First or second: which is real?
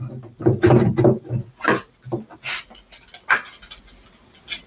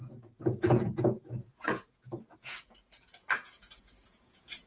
first